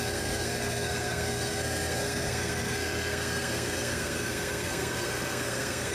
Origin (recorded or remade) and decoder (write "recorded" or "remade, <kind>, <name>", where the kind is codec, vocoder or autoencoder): remade, codec, SNAC